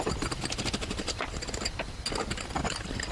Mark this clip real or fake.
real